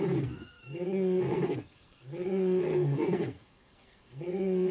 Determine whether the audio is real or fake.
fake